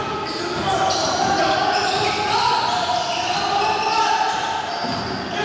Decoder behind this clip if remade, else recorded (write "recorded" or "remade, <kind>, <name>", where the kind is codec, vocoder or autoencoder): recorded